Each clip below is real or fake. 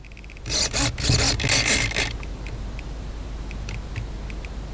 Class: real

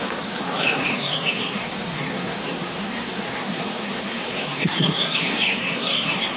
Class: fake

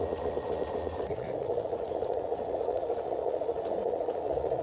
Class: fake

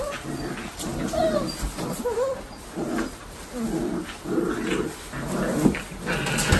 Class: real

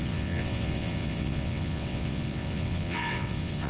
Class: fake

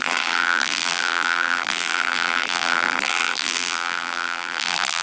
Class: fake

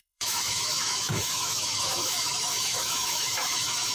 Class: fake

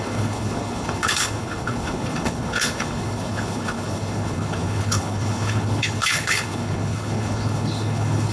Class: fake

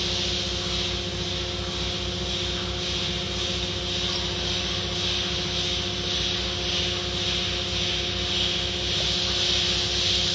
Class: real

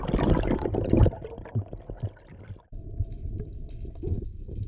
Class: real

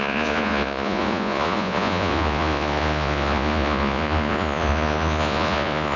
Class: fake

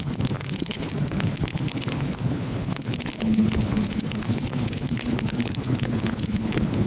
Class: fake